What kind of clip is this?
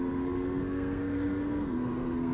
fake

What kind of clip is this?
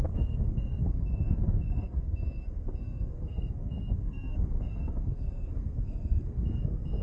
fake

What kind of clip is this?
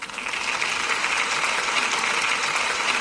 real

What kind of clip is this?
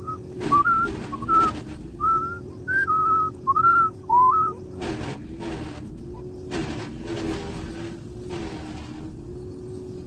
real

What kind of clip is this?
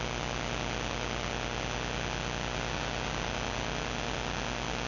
real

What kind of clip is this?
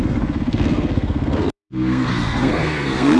fake